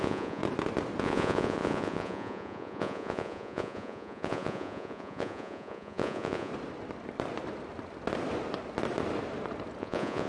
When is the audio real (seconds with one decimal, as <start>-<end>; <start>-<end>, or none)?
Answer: 0.4-1.0; 6.5-9.8